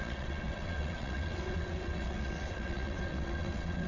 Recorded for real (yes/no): no